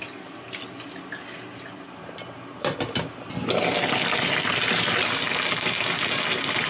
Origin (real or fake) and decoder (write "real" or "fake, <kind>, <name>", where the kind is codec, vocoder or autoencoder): real